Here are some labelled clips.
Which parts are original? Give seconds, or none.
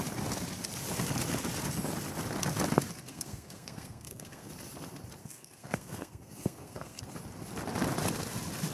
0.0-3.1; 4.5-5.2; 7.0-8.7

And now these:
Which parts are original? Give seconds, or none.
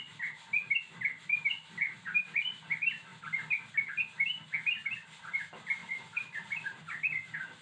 0.0-7.6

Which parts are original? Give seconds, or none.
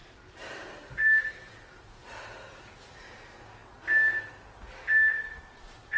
0.0-5.1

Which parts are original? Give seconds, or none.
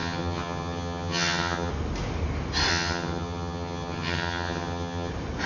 1.7-2.7; 5.1-5.5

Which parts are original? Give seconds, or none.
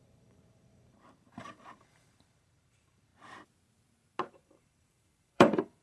3.1-4.3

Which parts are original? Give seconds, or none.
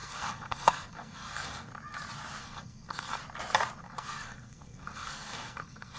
1.7-2.4; 3.2-3.8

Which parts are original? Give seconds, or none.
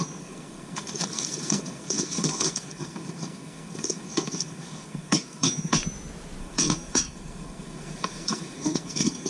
5.8-6.4